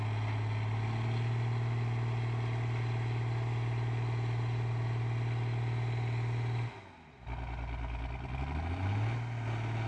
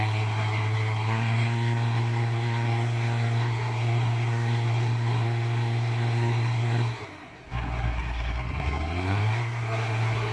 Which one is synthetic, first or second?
second